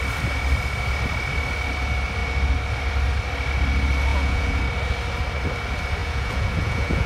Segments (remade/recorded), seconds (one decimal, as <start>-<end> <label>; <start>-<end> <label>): 0.0-4.1 recorded; 4.1-4.6 remade; 4.6-6.0 recorded; 6.0-7.1 remade